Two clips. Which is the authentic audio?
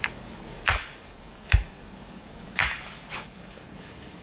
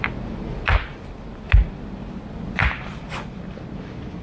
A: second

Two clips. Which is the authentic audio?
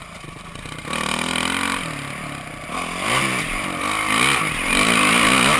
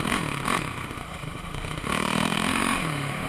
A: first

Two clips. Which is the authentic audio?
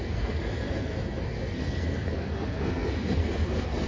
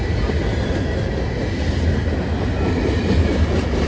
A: second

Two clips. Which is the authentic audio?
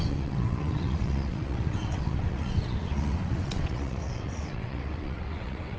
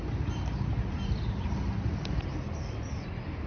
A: second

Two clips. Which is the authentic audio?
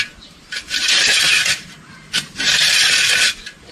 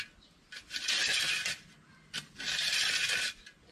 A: second